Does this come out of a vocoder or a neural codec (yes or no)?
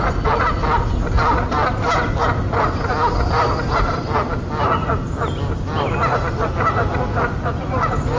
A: no